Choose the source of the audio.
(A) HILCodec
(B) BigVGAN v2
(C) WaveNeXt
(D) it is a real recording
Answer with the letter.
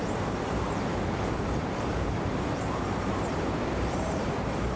B